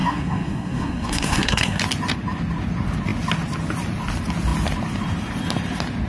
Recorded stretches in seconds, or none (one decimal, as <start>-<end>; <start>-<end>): 1.8-6.1